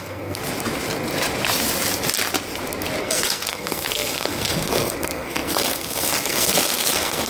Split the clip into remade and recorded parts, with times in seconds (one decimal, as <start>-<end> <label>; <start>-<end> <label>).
0.0-0.4 remade; 0.4-3.0 recorded; 3.0-7.3 remade